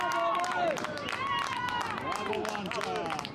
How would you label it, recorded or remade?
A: recorded